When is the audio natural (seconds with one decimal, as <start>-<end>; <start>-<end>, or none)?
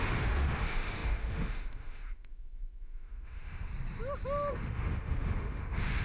3.7-4.5